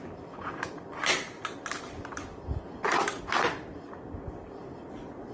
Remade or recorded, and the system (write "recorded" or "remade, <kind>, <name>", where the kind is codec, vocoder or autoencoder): recorded